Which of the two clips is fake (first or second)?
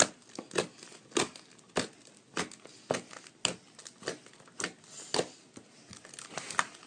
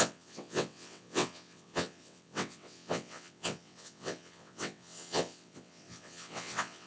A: second